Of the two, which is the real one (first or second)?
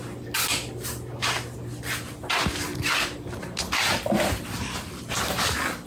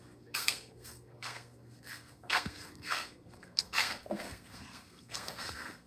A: first